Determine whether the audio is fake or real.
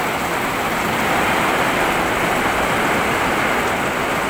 real